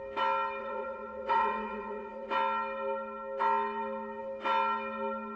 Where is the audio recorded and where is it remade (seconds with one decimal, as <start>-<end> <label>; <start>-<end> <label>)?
0.0-0.6 recorded; 0.6-2.3 remade; 2.3-5.4 recorded